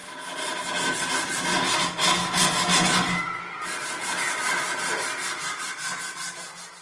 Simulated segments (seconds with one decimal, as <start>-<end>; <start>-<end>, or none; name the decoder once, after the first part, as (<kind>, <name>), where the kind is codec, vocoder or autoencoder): none